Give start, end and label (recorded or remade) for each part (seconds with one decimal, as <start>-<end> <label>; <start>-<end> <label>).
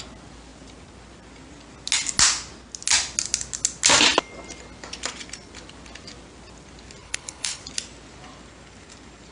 0.0-7.0 recorded; 7.0-7.6 remade; 7.6-9.3 recorded